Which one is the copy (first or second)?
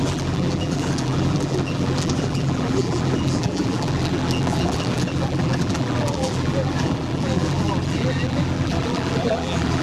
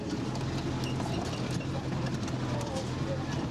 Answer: first